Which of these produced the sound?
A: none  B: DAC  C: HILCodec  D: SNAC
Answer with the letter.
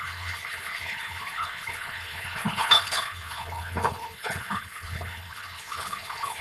C